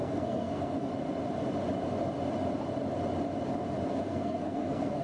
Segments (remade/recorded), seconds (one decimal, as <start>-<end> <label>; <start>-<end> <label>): 0.0-0.9 remade; 0.9-3.9 recorded; 3.9-5.0 remade